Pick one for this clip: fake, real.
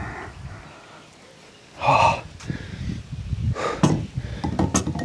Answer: real